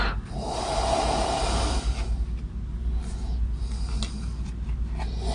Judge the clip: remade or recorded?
recorded